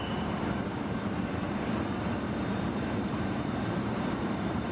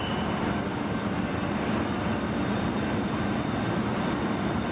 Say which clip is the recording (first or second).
second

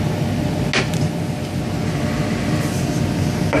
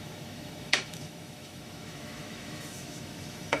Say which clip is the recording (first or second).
first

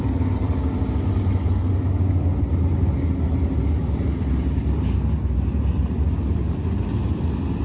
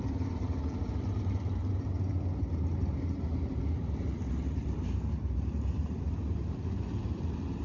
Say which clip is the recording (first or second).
first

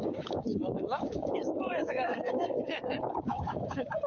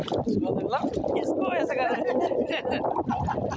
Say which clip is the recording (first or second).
second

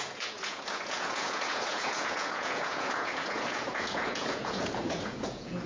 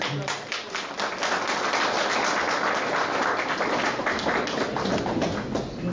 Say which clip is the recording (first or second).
second